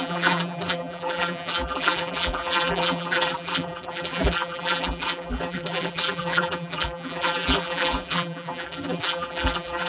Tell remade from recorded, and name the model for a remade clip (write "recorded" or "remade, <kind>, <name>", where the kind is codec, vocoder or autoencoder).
remade, vocoder, BigVGAN v2